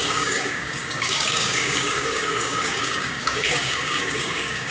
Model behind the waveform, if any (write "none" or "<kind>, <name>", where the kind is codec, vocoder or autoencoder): codec, DAC